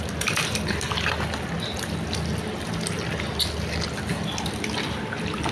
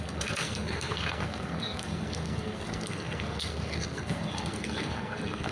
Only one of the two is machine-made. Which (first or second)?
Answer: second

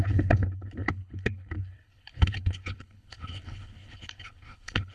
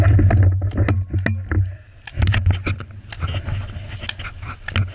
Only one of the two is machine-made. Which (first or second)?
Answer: first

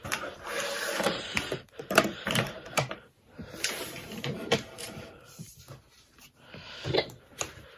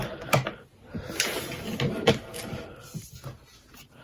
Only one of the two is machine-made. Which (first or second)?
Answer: first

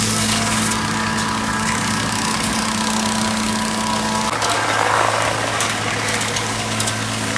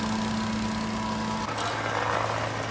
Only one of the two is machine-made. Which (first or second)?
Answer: first